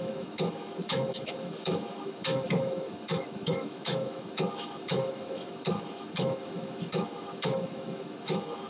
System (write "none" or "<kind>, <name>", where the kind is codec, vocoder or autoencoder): autoencoder, DAC-VAE